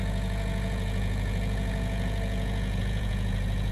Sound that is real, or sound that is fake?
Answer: fake